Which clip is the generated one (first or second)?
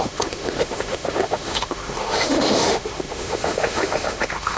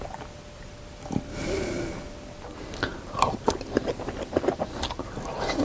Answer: first